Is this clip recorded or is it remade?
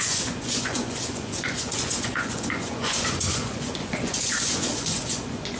remade